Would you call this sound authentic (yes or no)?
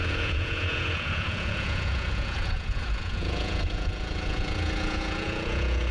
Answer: no